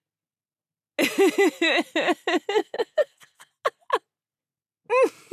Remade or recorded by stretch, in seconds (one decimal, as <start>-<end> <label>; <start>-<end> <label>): 0.0-2.6 recorded; 2.6-3.5 remade; 3.5-5.3 recorded